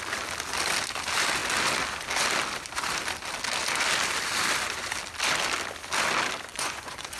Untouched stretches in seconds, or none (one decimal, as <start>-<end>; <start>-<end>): 0.0-6.5